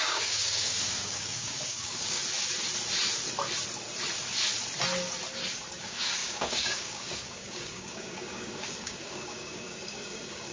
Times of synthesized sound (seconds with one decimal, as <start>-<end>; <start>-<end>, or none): 0.0-2.2; 5.8-10.5